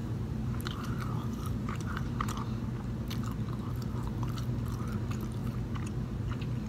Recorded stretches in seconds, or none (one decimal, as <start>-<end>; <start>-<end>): 2.0-6.7